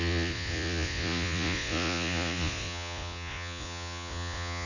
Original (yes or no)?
no